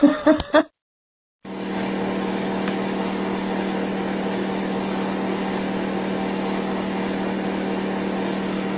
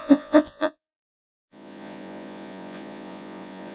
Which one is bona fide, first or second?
first